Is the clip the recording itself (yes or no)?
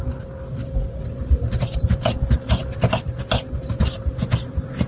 yes